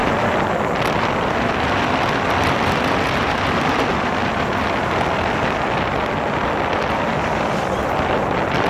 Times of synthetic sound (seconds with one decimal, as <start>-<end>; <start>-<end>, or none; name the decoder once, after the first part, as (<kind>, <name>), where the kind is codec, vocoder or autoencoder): 0.0-8.7 (vocoder, BigVGAN v2)